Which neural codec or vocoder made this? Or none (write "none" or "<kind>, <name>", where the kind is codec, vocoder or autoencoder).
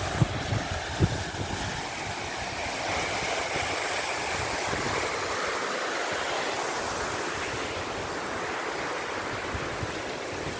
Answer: none